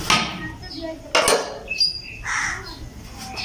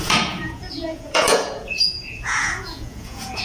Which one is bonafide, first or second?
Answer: first